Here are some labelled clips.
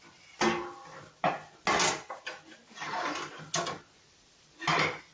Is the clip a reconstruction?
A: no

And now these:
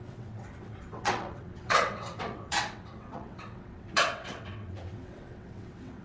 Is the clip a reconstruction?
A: yes